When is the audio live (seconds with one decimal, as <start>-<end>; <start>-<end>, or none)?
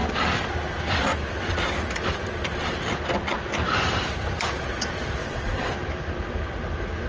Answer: 0.0-5.2; 5.7-7.1